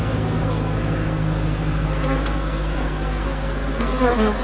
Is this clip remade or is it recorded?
remade